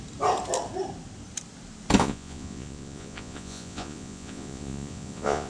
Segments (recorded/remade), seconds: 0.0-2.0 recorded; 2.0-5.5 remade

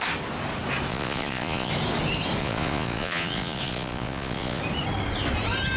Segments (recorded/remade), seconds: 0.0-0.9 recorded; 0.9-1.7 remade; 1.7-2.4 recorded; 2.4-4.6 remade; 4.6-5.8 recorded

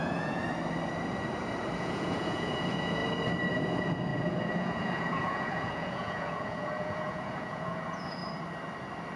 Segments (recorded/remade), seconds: 0.0-0.4 remade; 0.4-1.8 recorded; 1.8-3.0 remade; 3.0-3.5 recorded; 3.5-8.2 remade; 8.2-9.2 recorded